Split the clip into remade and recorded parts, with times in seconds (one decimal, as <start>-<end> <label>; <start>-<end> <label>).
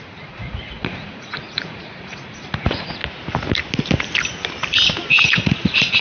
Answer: 0.0-3.0 remade; 3.0-5.2 recorded; 5.2-6.0 remade